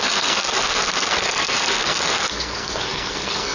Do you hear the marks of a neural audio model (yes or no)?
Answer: yes